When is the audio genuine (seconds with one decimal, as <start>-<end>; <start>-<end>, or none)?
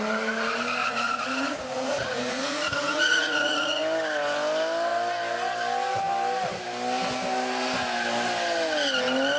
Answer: 0.0-0.8; 3.8-9.4